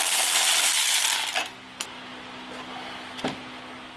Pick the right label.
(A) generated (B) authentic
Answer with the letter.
B